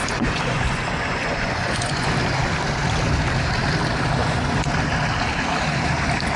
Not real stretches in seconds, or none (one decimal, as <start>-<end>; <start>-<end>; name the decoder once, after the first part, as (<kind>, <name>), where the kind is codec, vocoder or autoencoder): 0.0-2.1 (vocoder, Vocos); 4.2-4.7